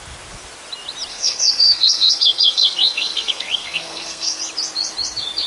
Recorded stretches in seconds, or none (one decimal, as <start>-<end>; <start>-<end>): 0.0-1.1; 4.4-5.5